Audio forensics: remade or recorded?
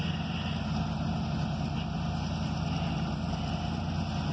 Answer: recorded